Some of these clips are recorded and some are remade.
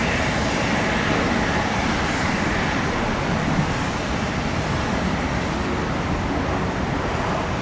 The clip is recorded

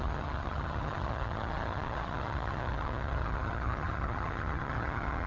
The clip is remade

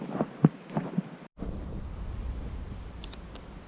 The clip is remade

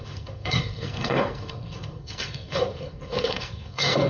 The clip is remade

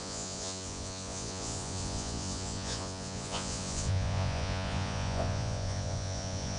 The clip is remade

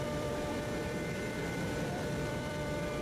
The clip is remade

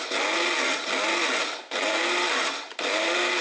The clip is recorded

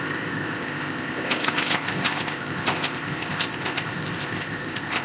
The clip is remade